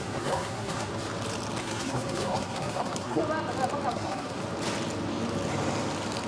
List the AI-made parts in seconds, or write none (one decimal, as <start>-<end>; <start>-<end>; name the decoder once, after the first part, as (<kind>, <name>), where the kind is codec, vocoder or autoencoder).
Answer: 0.0-0.9 (codec, SNAC); 1.6-3.2; 3.9-4.4